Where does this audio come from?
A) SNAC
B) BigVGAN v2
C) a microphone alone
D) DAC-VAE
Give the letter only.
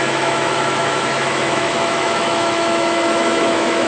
D